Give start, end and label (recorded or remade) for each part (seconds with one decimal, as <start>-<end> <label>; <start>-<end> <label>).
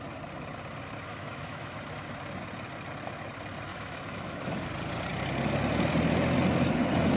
0.0-1.1 recorded; 1.1-1.8 remade; 1.8-3.7 recorded; 3.7-4.6 remade; 4.6-7.2 recorded